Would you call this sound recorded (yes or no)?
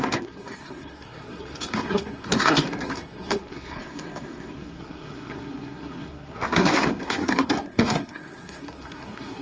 no